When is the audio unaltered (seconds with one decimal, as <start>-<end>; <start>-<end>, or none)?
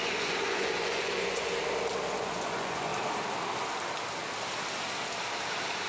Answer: 1.5-2.2; 2.9-5.9